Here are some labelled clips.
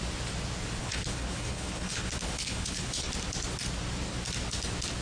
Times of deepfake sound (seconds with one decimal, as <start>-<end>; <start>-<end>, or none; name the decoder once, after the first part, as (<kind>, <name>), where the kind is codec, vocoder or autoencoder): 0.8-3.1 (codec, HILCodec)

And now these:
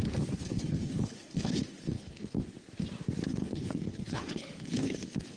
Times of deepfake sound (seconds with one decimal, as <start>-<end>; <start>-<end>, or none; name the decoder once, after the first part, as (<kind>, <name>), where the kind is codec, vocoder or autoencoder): 0.4-2.4 (codec, HILCodec); 3.3-5.4

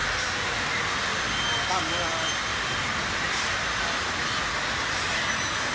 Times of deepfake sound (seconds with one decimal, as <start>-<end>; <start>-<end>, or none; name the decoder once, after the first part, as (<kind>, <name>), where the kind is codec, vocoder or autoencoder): none

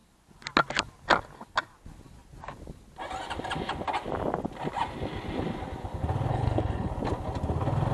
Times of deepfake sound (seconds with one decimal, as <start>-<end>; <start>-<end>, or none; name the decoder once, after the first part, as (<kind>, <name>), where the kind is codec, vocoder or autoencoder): 6.3-6.9 (codec, HILCodec)

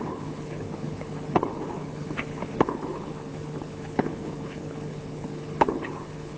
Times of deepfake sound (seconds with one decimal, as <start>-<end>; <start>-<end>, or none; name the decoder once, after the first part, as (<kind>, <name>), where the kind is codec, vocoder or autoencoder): 0.0-6.4 (codec, HILCodec)

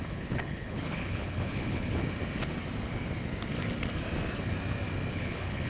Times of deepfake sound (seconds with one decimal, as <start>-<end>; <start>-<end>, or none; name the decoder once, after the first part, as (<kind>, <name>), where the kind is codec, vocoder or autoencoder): 0.0-2.0 (codec, HILCodec); 5.1-5.7

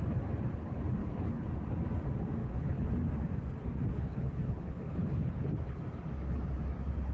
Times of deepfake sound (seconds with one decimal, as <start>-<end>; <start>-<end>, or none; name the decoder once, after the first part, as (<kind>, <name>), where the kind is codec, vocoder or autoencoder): 1.0-1.5 (codec, HILCodec); 2.4-2.9; 3.9-5.8

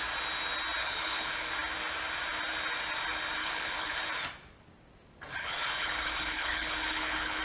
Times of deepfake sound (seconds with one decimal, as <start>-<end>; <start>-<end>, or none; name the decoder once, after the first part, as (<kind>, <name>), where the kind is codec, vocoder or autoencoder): 0.8-1.5 (codec, HILCodec); 3.4-4.0; 5.4-7.4